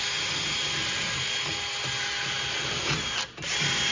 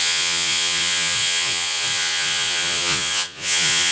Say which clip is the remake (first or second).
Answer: second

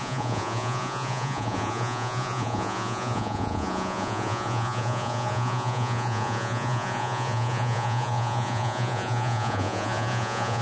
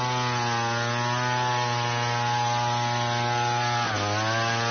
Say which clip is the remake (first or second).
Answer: first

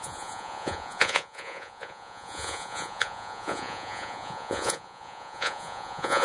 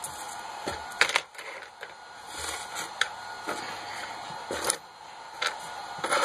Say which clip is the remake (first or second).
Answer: first